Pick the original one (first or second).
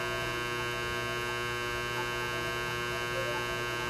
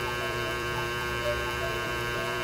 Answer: first